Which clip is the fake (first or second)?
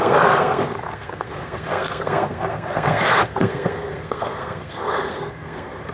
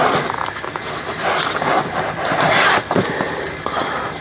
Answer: first